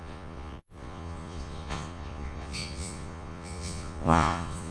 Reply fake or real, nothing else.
fake